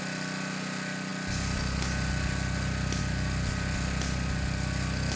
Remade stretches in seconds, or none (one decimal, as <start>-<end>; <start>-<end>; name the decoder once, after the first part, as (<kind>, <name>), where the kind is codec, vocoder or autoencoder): none